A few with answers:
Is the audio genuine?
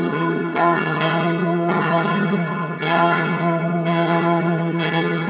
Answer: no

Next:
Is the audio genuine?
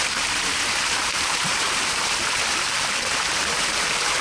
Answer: no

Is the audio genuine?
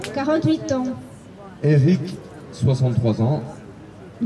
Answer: yes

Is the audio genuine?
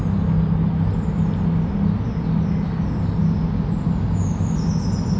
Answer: yes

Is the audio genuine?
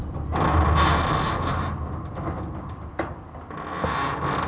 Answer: yes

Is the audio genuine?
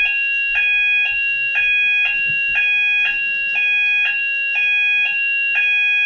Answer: yes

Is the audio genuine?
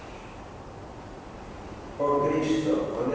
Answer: yes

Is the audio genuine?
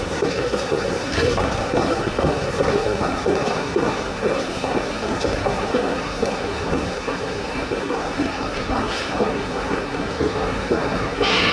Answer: no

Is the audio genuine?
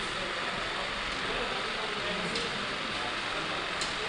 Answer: yes